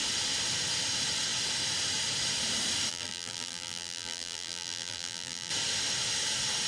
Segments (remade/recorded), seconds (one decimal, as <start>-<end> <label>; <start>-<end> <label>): 0.0-2.9 recorded; 2.9-5.5 remade; 5.5-6.7 recorded